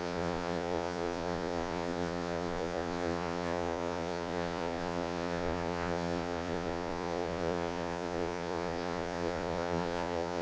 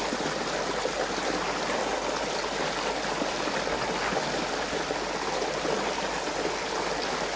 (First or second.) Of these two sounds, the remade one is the first